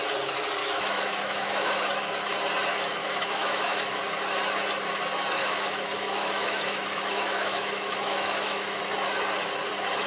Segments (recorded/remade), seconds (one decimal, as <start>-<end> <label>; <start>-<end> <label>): 0.0-0.6 recorded; 0.6-1.9 remade; 1.9-3.0 recorded; 3.0-4.0 remade; 4.0-5.4 recorded; 5.4-8.8 remade; 8.8-10.1 recorded